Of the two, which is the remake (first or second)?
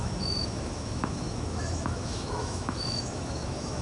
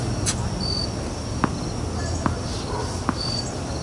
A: first